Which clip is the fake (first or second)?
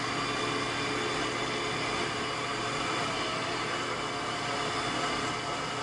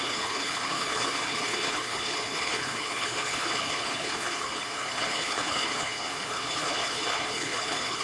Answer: second